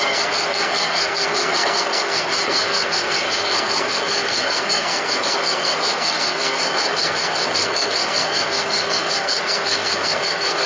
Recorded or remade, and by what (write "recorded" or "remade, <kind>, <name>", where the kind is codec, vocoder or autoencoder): remade, codec, SNAC